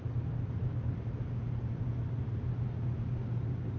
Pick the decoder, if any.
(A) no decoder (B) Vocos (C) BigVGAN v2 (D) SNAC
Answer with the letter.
A